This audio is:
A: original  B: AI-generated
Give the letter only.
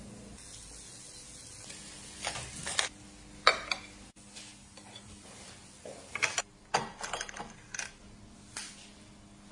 A